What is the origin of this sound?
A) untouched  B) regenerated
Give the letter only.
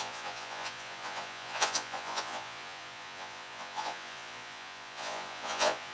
B